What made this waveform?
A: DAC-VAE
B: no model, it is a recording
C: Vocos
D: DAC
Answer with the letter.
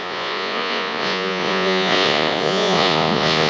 C